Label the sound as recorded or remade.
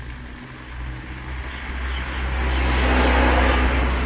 recorded